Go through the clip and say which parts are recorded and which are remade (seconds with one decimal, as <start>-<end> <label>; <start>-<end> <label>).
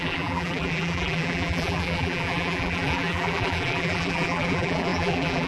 0.0-5.5 remade